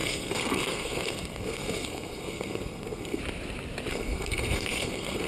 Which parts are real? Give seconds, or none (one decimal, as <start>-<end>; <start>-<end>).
3.2-3.9

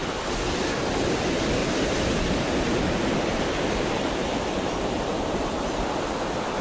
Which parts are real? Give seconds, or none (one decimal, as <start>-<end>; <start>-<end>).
0.0-1.6; 5.6-6.6

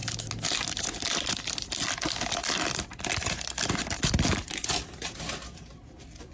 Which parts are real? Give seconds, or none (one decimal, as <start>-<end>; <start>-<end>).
0.0-6.3